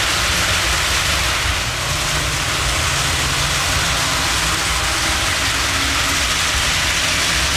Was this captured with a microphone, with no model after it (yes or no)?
yes